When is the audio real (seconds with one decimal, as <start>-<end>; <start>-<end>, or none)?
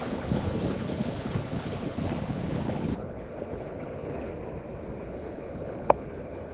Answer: 4.3-5.0